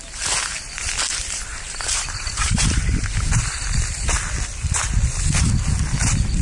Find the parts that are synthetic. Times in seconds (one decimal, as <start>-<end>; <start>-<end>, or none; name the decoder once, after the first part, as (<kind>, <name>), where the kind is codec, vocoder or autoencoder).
1.5-3.3 (vocoder, BigVGAN v2)